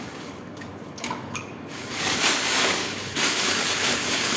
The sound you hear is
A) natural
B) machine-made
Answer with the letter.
B